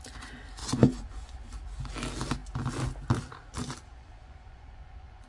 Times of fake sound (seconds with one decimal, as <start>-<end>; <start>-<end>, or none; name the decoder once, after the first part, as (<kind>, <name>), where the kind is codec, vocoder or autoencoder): 0.6-1.5 (vocoder, Vocos); 3.9-5.3